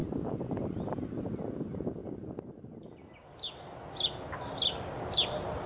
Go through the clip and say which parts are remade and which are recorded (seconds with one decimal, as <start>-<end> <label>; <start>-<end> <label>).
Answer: 0.0-5.7 recorded